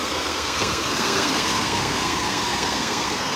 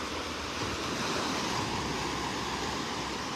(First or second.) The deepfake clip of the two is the first